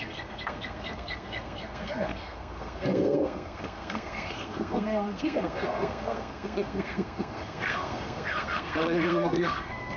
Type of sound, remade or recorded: remade